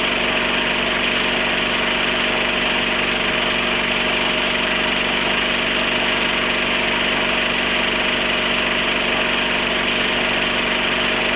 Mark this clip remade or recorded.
recorded